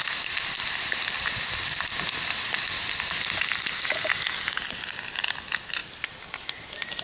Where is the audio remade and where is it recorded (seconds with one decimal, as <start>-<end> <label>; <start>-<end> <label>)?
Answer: 0.0-7.0 recorded